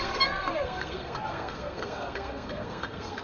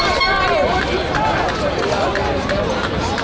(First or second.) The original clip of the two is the second